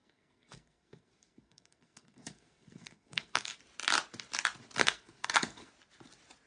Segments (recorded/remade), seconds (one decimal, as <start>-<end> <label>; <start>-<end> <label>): 0.0-3.6 remade; 3.6-4.8 recorded; 4.8-5.7 remade; 5.7-6.5 recorded